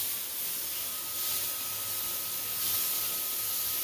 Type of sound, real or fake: real